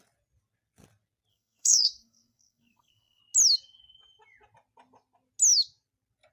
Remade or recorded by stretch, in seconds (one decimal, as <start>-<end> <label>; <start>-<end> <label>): 0.0-1.3 recorded; 1.3-3.2 remade; 3.2-6.3 recorded